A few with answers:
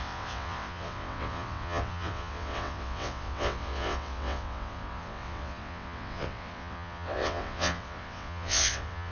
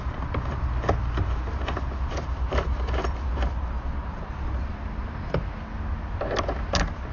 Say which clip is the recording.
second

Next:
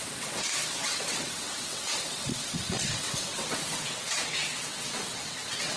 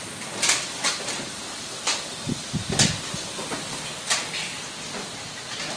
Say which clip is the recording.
second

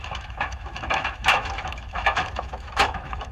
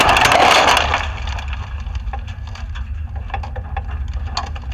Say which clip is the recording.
second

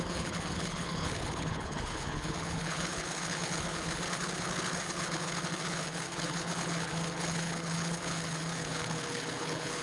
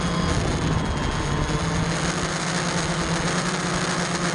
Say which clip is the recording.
second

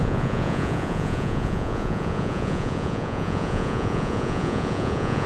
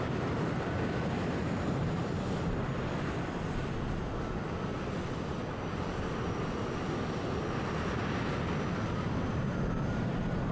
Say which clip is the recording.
second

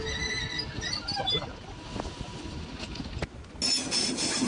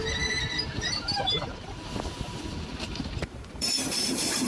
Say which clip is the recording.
first